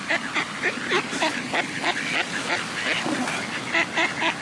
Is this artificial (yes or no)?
no